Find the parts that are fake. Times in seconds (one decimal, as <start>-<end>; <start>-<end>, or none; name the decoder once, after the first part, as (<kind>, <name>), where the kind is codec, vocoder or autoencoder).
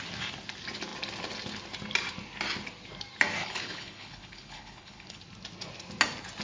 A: 3.4-5.2 (codec, HILCodec)